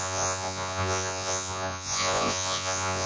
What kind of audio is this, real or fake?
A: fake